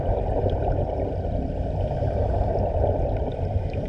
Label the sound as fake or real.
real